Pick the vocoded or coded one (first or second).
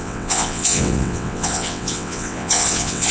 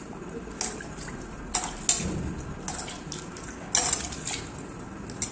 first